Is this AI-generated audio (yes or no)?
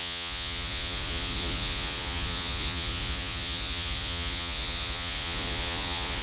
yes